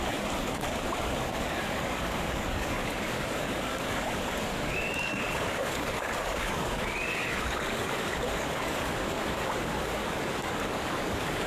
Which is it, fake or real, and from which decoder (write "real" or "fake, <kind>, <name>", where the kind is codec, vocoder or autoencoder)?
fake, codec, DAC